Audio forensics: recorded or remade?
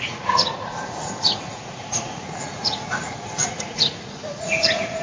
remade